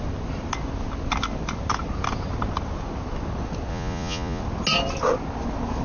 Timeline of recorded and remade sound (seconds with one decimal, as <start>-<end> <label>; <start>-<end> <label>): 0.0-3.7 recorded; 3.7-4.4 remade; 4.4-5.8 recorded